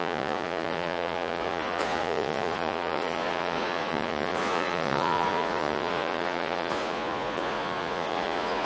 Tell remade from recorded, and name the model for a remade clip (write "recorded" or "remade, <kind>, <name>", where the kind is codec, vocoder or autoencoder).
remade, vocoder, Vocos